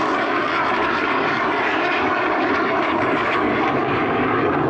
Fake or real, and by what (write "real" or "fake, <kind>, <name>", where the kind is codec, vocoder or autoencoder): fake, codec, DAC